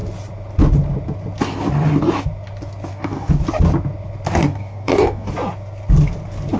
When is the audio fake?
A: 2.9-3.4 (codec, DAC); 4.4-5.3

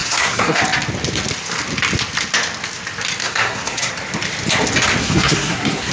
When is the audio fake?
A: 0.0-0.6 (codec, SNAC); 3.2-3.9; 5.0-5.9

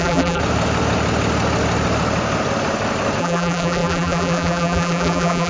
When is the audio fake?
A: 0.0-0.4 (vocoder, BigVGAN v2); 3.2-5.5

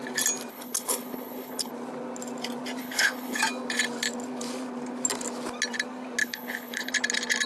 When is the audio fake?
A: 0.5-1.7 (codec, HILCodec); 2.8-3.4; 6.2-6.9